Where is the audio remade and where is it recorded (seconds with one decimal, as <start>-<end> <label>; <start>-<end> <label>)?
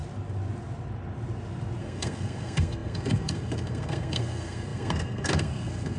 0.0-1.8 recorded; 1.8-6.0 remade